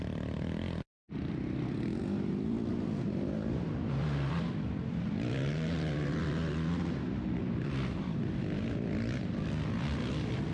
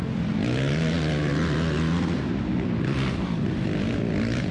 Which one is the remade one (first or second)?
first